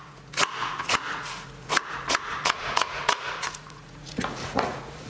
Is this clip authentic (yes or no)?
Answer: no